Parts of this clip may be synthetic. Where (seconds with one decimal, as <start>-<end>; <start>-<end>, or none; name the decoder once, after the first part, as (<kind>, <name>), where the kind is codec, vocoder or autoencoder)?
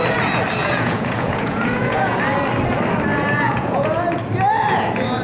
0.6-2.2 (vocoder, Vocos); 3.1-4.0